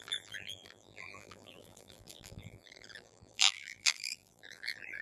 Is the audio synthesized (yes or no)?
yes